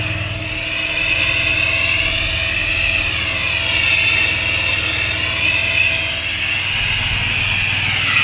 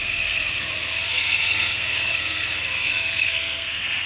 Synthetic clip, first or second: second